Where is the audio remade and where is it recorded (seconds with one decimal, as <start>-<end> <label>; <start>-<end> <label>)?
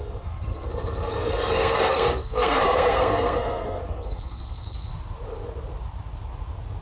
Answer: 0.0-4.9 remade; 4.9-6.8 recorded